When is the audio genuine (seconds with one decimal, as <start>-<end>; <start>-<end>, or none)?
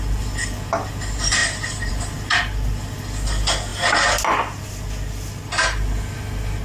0.0-6.6